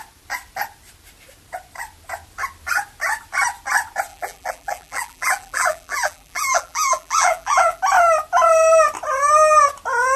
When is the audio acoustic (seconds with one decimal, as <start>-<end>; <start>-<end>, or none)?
0.0-4.1; 7.8-10.2